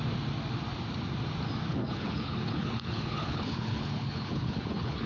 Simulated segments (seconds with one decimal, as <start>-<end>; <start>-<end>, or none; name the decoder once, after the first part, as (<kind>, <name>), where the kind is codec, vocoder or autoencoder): 1.7-5.1 (codec, HILCodec)